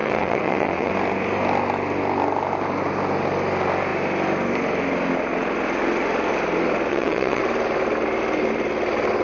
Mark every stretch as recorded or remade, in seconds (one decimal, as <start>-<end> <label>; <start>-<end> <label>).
0.0-0.9 remade; 0.9-6.9 recorded; 6.9-7.4 remade; 7.4-9.2 recorded